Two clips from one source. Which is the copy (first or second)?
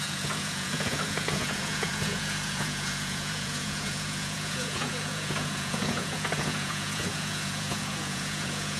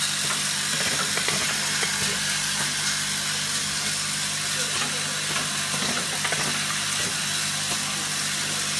first